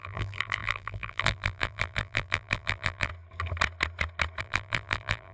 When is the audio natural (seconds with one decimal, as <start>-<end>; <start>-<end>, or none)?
3.1-4.4